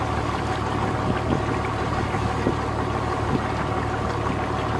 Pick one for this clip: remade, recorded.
recorded